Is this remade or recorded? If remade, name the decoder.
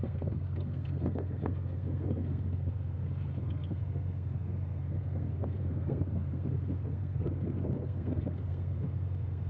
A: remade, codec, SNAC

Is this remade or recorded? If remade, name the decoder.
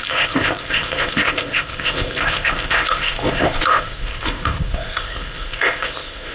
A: remade, codec, ZipCodec